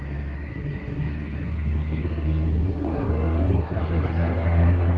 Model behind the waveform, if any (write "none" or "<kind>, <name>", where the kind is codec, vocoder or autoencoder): codec, SNAC